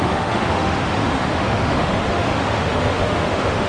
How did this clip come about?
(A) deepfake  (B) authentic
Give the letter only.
A